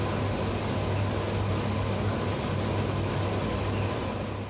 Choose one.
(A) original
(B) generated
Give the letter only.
A